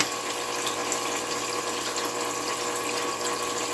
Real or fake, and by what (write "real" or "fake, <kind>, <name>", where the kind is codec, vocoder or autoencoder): real